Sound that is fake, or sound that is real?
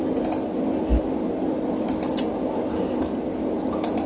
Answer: real